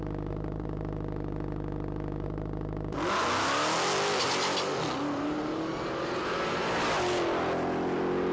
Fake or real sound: real